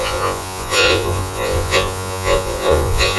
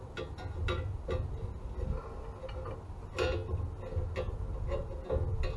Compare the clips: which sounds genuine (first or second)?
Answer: second